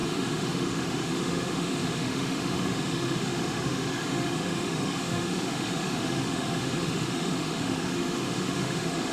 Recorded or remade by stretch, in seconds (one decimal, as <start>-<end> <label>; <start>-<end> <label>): 0.0-9.1 remade